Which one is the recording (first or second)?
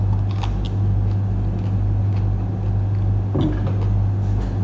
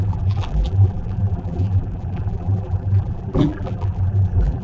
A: first